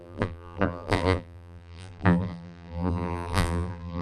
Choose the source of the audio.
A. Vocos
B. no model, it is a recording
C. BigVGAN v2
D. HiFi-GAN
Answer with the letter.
C